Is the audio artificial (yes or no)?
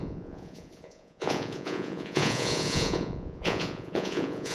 yes